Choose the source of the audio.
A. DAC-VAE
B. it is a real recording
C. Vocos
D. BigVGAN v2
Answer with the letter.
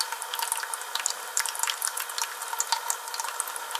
B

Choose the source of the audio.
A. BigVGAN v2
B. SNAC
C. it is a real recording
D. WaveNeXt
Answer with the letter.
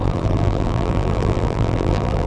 A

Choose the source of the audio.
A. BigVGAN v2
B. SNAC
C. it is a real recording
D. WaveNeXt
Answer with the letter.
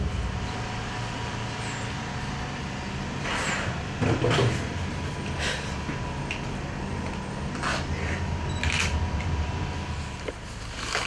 C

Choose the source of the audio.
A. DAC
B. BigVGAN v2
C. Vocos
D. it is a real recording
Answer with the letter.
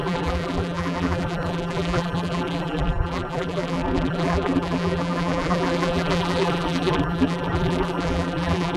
B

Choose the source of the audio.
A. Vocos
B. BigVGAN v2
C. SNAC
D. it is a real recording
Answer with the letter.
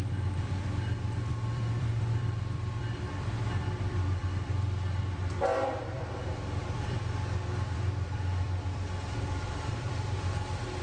B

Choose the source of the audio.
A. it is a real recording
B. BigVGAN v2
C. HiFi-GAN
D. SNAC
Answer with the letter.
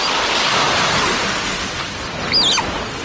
A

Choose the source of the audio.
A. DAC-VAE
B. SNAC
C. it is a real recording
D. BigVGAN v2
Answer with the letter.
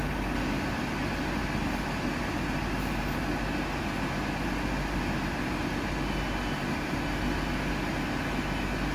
C